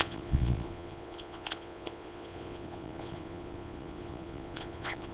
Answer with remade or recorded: remade